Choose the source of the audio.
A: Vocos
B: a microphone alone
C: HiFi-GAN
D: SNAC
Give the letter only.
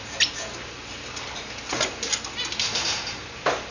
B